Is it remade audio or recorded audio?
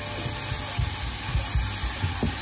recorded